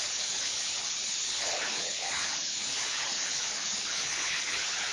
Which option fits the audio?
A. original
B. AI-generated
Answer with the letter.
B